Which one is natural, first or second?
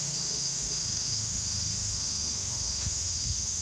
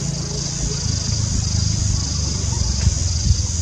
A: second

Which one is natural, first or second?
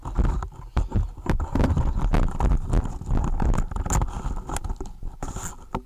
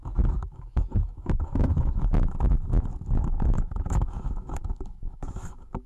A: first